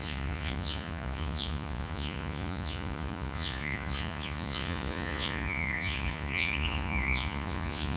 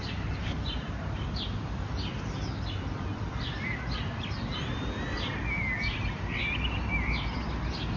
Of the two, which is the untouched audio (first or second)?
second